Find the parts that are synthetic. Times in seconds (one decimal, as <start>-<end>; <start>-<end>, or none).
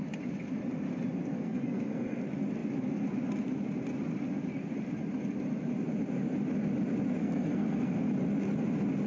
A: 1.3-2.2; 7.2-8.1